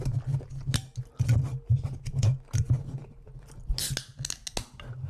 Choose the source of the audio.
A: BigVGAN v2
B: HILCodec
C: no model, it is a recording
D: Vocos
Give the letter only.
C